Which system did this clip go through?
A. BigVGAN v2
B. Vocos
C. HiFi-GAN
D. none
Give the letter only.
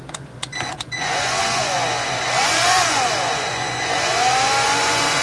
B